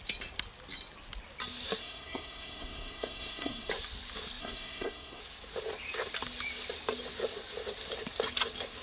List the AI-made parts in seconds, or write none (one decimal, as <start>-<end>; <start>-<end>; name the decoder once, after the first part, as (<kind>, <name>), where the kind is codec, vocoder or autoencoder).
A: 1.8-3.7 (codec, SNAC); 4.4-5.2